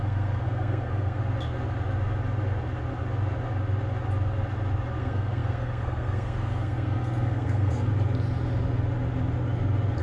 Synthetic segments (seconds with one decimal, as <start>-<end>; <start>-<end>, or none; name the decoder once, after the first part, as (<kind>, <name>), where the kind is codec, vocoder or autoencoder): 0.0-1.2 (codec, SNAC); 5.0-7.9